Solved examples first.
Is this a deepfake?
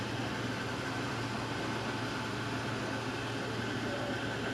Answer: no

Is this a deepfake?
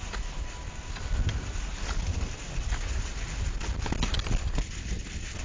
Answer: no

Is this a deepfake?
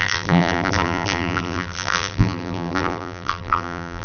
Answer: yes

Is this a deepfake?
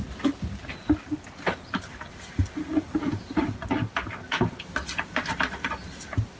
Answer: no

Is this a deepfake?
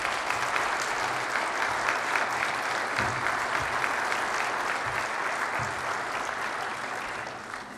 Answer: no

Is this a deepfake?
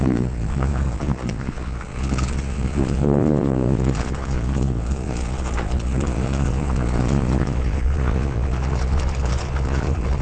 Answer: yes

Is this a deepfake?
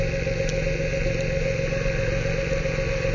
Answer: no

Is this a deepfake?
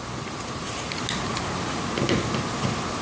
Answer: no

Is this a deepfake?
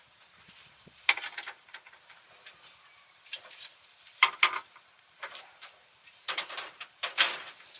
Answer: yes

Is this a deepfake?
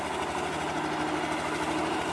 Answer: no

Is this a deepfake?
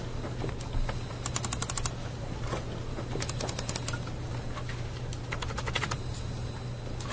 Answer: no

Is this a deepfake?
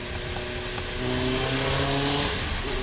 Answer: no